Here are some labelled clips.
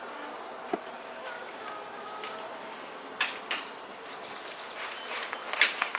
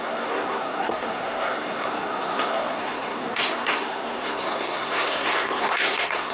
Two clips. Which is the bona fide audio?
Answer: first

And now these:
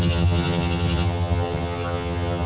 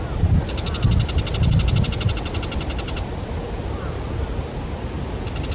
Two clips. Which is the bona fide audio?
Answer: second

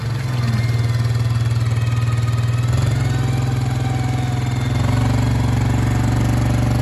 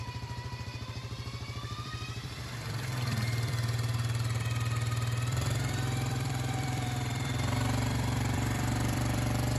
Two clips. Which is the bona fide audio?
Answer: first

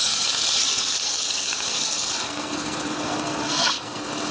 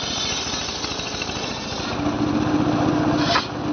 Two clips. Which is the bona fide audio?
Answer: second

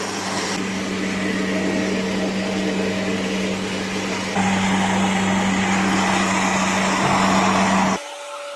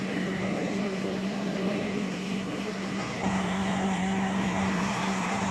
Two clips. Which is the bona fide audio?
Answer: first